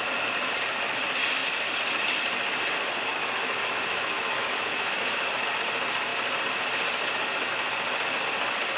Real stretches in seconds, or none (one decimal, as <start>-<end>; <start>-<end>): 0.0-3.1; 5.3-8.8